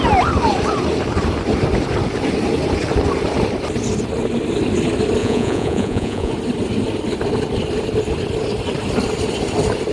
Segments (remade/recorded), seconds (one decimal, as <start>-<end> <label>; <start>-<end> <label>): 0.0-5.2 recorded; 5.2-6.3 remade; 6.3-9.9 recorded